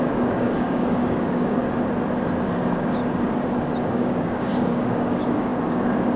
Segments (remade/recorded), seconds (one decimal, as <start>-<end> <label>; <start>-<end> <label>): 0.0-1.6 remade; 1.6-2.4 recorded; 2.4-3.0 remade; 3.0-3.8 recorded; 3.8-6.2 remade